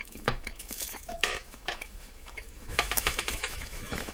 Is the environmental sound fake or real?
fake